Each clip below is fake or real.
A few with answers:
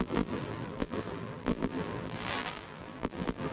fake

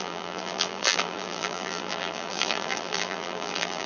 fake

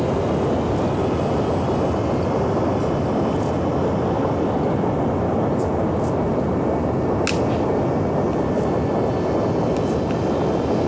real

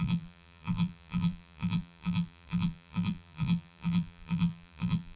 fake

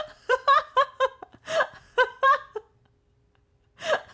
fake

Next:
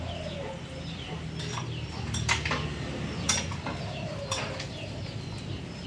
fake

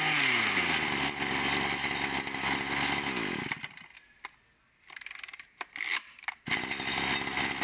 real